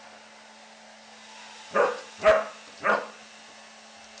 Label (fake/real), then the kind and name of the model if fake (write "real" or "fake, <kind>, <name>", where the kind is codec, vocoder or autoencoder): real